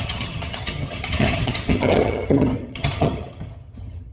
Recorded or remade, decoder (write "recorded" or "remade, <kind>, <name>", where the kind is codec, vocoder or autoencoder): remade, vocoder, HiFi-GAN